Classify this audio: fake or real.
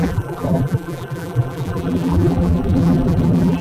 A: fake